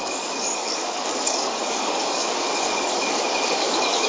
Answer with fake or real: fake